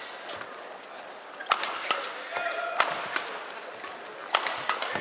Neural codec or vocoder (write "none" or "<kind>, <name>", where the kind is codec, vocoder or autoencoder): none